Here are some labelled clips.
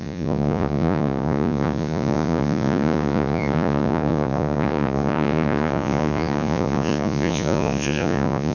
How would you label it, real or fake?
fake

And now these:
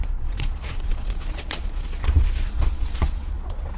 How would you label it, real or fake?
fake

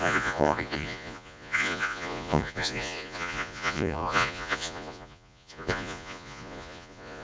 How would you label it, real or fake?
fake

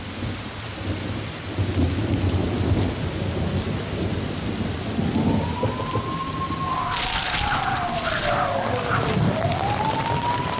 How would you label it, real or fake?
real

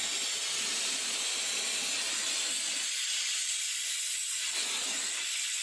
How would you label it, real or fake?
real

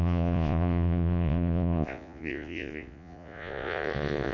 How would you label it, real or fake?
fake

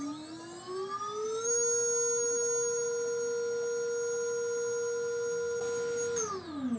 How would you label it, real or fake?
real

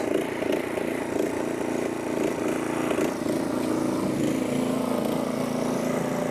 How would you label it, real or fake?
real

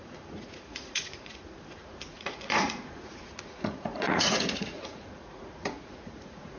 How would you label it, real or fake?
fake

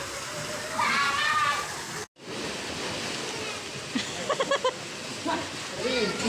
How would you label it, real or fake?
real